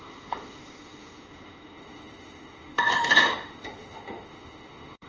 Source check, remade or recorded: remade